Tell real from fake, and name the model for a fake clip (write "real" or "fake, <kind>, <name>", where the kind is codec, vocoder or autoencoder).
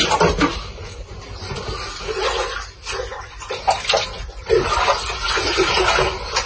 real